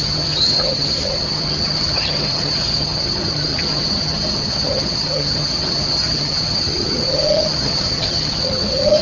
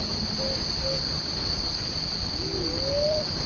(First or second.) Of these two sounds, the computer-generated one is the first